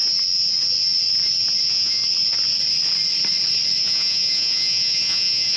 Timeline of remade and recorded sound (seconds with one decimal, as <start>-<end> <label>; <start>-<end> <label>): 0.0-1.6 recorded; 1.6-2.0 remade; 2.0-3.8 recorded; 3.8-5.6 remade